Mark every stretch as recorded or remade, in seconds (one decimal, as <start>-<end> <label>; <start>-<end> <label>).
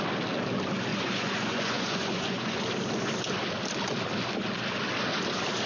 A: 0.0-0.9 recorded; 0.9-2.6 remade; 2.6-5.7 recorded